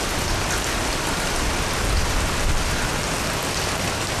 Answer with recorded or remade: recorded